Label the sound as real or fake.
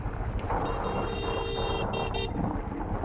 real